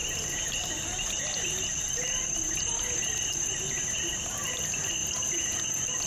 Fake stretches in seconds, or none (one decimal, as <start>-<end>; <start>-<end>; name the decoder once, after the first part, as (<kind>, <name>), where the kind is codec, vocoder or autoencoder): 0.0-3.3 (vocoder, BigVGAN v2)